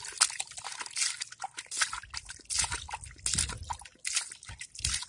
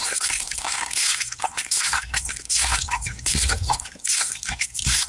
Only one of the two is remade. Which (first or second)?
second